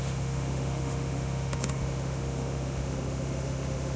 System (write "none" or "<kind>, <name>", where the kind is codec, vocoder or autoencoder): autoencoder, DAC-VAE